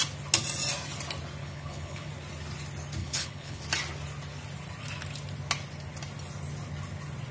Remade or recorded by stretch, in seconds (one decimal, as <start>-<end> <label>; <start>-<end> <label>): 0.0-1.4 recorded; 1.4-2.1 remade; 2.1-3.0 recorded; 3.0-3.6 remade; 3.6-7.3 recorded